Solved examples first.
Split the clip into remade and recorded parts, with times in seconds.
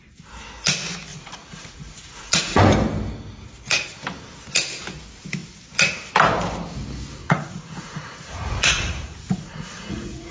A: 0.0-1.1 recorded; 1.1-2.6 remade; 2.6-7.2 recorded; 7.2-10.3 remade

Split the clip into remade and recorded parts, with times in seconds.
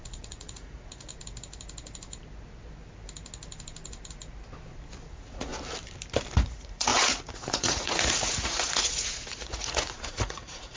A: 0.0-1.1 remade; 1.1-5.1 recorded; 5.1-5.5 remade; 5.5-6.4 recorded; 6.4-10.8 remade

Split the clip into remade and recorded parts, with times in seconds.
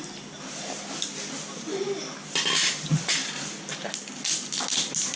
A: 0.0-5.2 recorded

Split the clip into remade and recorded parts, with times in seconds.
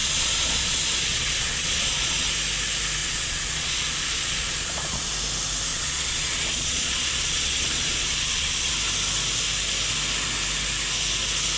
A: 0.0-2.3 remade; 2.3-3.0 recorded; 3.0-5.1 remade; 5.1-5.7 recorded; 5.7-8.7 remade; 8.7-11.6 recorded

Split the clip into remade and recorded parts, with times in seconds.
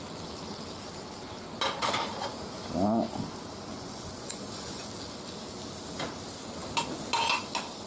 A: 0.0-3.7 recorded; 3.7-4.9 remade; 4.9-7.9 recorded